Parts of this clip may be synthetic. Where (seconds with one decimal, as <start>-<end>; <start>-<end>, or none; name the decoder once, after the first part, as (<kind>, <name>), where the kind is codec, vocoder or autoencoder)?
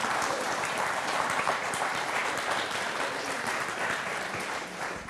0.0-2.2 (vocoder, BigVGAN v2); 3.3-5.1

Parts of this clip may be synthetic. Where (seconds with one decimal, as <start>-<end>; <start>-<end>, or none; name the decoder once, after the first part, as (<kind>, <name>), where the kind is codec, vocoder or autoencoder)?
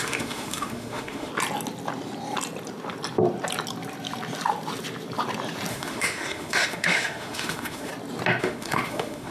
0.0-1.3 (autoencoder, DAC-VAE); 5.7-7.9; 8.4-9.3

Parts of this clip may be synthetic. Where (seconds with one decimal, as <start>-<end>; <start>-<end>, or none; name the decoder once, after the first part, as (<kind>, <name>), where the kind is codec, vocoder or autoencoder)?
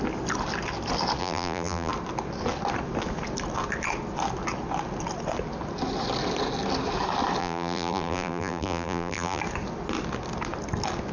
1.2-1.9 (vocoder, BigVGAN v2); 7.4-9.4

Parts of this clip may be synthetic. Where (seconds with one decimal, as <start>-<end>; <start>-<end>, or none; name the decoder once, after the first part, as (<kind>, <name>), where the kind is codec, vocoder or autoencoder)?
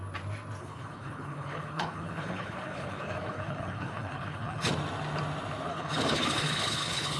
0.6-4.7 (codec, HILCodec); 5.7-7.2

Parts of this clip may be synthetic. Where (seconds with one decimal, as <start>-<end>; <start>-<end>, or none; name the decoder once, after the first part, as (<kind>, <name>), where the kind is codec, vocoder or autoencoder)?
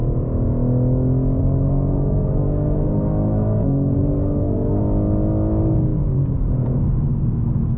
1.4-4.8 (codec, SNAC)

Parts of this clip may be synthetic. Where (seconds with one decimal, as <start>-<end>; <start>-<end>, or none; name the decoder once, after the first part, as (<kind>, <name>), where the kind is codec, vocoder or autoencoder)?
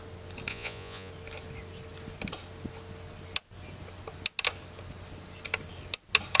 0.5-1.1 (vocoder, Vocos)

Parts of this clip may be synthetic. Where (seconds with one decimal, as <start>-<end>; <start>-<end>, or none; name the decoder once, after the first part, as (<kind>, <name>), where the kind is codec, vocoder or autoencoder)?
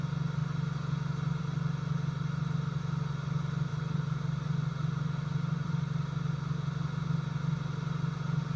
3.7-5.7 (vocoder, BigVGAN v2)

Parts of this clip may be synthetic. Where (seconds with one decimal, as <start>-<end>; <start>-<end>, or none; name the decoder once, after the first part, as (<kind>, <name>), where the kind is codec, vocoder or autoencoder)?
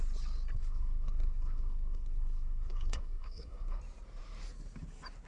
0.6-3.8 (codec, SNAC)